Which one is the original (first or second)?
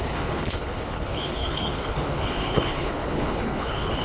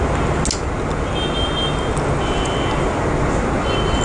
second